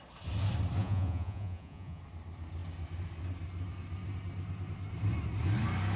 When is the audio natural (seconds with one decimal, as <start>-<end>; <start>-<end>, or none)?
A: 0.0-0.8; 2.0-6.0